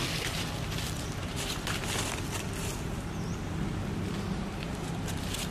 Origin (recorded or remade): remade